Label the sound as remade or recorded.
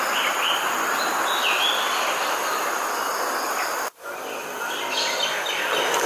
recorded